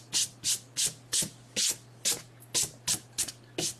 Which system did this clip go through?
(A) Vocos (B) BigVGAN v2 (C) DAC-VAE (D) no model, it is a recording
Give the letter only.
D